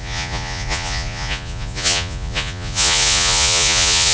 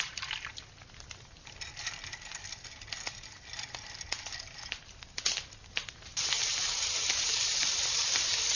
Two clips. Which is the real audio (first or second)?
second